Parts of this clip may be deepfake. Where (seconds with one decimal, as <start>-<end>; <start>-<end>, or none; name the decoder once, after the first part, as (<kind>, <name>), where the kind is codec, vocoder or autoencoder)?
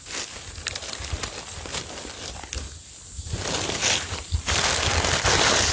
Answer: none